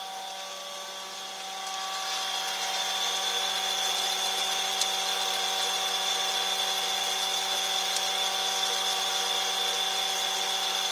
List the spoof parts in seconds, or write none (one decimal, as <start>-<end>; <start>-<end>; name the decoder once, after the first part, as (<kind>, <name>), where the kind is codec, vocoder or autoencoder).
none